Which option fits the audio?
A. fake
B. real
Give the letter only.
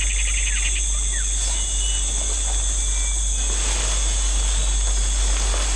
B